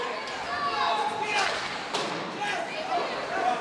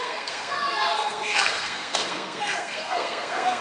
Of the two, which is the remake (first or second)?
second